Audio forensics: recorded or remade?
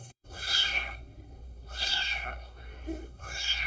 remade